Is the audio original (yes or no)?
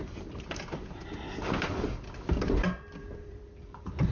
no